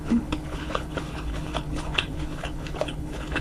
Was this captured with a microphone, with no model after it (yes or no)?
no